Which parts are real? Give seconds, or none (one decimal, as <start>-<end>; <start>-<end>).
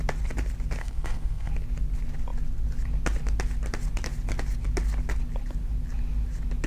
0.0-0.8; 1.5-6.7